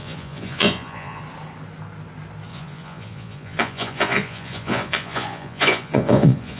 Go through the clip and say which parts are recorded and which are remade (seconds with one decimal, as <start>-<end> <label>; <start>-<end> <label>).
0.0-1.2 remade; 1.2-2.5 recorded; 2.5-6.6 remade